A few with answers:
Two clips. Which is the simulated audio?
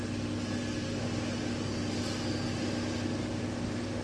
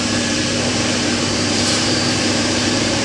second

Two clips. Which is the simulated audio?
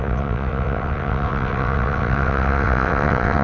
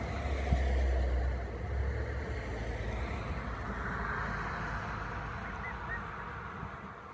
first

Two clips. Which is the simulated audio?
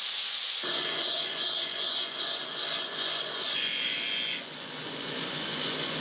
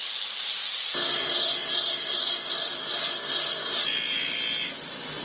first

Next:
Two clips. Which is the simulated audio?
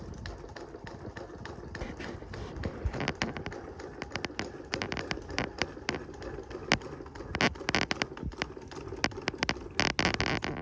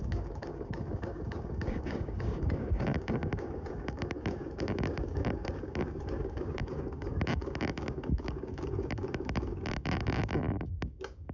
second